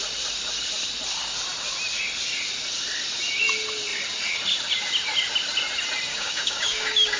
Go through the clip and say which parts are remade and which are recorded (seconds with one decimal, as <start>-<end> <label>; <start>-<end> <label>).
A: 0.0-6.1 recorded; 6.1-7.2 remade